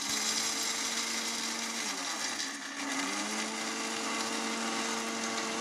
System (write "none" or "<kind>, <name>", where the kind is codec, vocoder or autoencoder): none